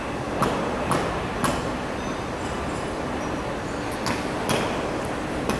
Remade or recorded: recorded